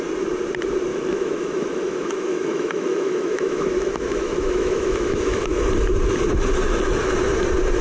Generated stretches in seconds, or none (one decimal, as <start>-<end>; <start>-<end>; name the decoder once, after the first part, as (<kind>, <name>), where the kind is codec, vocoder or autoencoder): 0.9-5.6 (autoencoder, DAC-VAE)